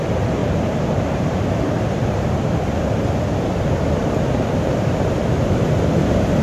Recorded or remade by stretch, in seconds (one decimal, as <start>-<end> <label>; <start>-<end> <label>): 0.0-0.4 recorded; 0.4-2.7 remade; 2.7-6.4 recorded